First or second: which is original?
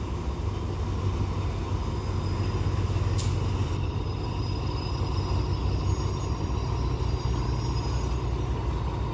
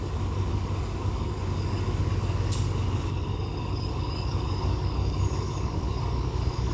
first